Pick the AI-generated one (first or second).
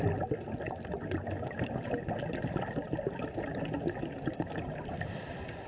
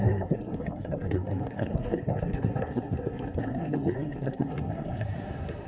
second